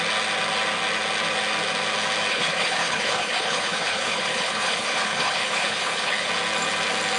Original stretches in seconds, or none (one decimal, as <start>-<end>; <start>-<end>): 0.0-2.3; 6.3-7.2